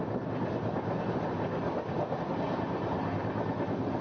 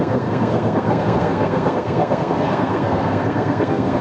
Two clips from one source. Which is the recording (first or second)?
first